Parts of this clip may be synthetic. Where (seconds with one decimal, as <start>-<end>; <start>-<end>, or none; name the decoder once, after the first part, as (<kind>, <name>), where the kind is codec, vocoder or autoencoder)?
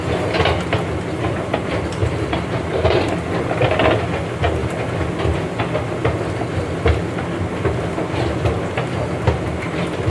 2.0-3.0 (vocoder, BigVGAN v2)